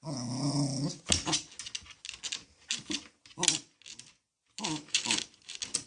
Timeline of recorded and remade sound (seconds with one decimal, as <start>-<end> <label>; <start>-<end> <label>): 0.0-4.6 recorded; 4.6-5.2 remade; 5.2-5.9 recorded